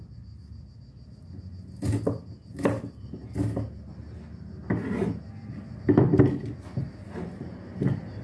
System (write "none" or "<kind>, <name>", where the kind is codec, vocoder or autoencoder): none